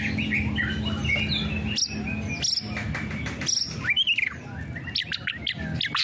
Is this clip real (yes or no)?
yes